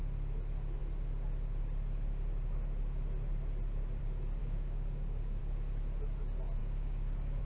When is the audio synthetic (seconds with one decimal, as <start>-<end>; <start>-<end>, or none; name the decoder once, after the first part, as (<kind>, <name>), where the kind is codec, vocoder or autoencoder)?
4.4-5.4 (codec, DAC); 6.6-7.4